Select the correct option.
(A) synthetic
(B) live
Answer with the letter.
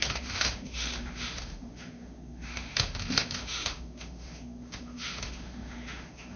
A